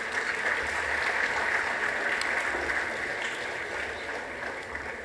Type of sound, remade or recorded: recorded